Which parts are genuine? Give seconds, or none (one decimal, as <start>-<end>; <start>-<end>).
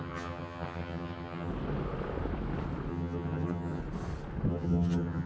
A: 1.5-2.9; 3.8-4.5